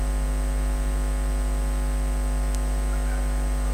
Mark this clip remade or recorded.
recorded